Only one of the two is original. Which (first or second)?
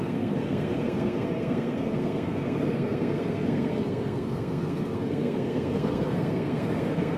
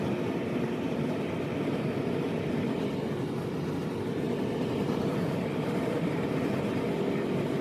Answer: second